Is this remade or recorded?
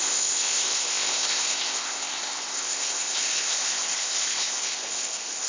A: remade